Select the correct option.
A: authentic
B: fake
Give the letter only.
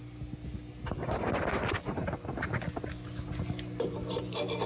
A